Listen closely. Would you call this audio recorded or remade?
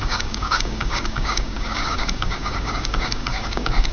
remade